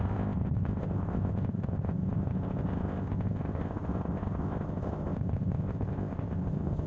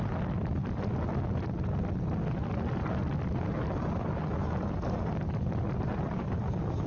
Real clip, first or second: second